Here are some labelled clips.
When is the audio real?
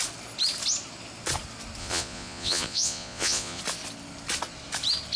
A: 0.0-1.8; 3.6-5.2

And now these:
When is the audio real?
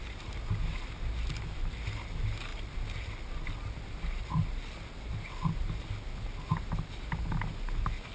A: 0.0-8.1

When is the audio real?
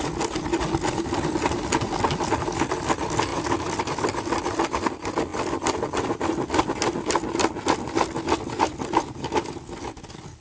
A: 0.0-10.4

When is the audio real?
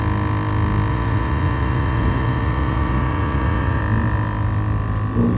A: 0.0-0.9; 3.8-5.4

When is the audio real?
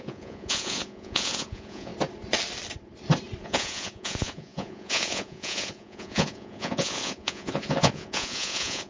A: 1.9-3.4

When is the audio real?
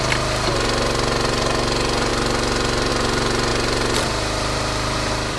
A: 0.0-2.1; 2.9-3.5